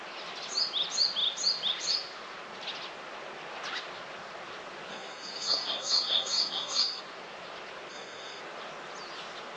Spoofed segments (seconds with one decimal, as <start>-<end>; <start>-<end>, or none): 4.9-7.0; 7.9-8.4